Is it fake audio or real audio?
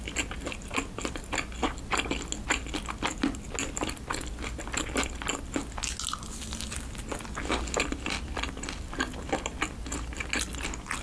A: real